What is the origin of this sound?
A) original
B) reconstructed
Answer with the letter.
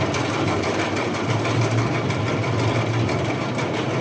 A